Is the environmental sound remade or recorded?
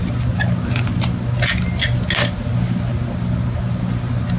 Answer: recorded